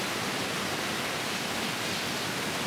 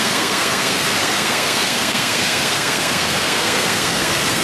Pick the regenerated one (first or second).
second